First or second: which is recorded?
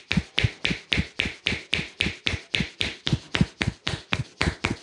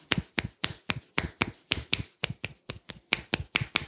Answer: second